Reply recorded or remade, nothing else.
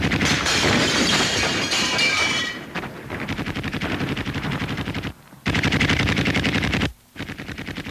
remade